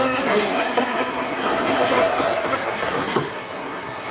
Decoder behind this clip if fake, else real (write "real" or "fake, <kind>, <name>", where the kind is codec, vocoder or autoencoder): fake, codec, SNAC